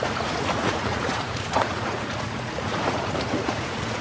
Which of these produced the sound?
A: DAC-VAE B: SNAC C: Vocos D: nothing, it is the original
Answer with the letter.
C